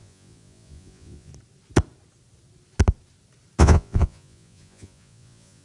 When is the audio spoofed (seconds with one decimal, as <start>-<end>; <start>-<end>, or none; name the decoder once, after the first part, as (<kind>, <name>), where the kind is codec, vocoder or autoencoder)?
0.0-1.3 (vocoder, Vocos); 3.6-5.6